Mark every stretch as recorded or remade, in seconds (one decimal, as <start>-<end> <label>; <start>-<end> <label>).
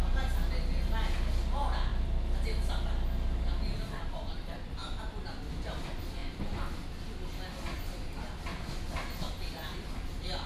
0.0-10.5 recorded